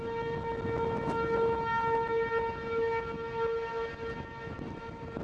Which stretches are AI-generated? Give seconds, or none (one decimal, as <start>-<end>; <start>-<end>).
none